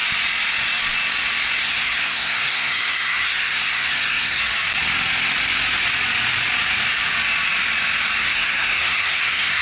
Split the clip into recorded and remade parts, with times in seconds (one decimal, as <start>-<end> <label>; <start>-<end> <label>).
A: 0.0-1.6 recorded; 1.6-4.4 remade; 4.4-8.2 recorded; 8.2-9.6 remade